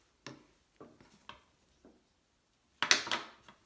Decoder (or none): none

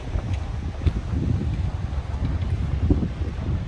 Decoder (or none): none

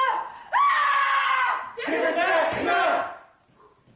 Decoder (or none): none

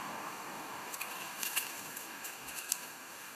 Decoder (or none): codec, DAC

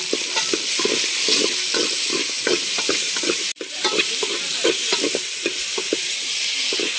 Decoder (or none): none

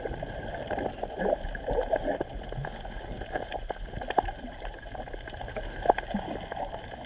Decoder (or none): none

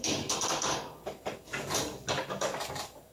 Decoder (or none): codec, DAC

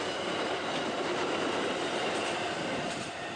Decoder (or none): none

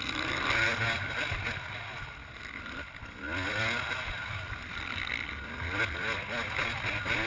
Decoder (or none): none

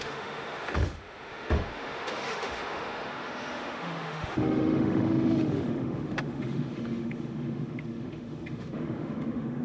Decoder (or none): autoencoder, DAC-VAE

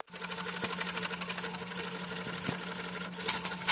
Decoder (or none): none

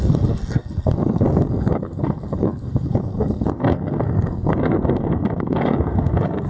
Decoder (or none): codec, SNAC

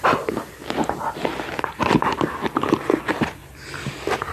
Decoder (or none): none